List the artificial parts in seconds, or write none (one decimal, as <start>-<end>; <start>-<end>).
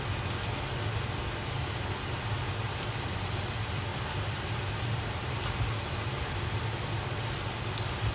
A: 3.9-5.3